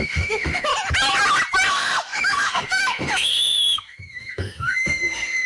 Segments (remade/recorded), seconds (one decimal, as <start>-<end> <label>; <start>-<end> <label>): 0.0-0.7 remade; 0.7-1.7 recorded; 1.7-5.5 remade